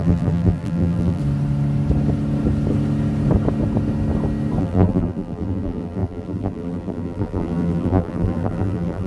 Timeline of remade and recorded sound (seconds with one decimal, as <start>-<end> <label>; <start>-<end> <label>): 0.0-1.2 remade; 1.2-4.6 recorded; 4.6-9.1 remade